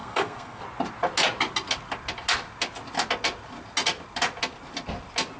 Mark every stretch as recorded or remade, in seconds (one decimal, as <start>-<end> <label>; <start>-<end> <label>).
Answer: 0.0-0.6 remade; 0.6-5.4 recorded